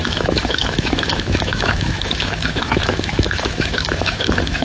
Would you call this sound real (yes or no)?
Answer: no